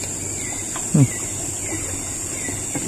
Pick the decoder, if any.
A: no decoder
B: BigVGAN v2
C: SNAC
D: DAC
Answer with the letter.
A